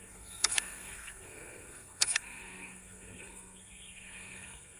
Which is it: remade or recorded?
remade